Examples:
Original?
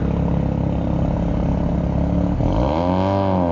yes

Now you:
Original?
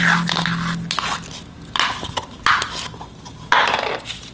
yes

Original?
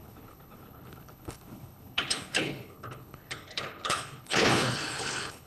no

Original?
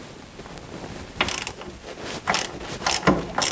yes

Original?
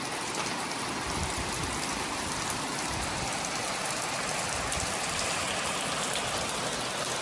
yes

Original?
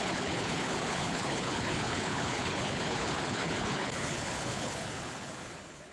no